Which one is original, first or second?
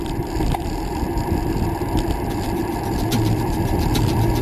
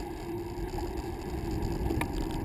second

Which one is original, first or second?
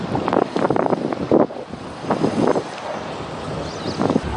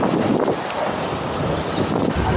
first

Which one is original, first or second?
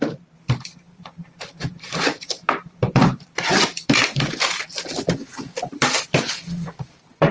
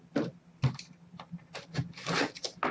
second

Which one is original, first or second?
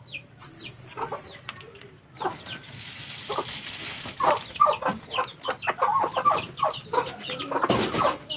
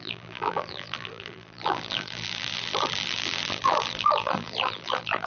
first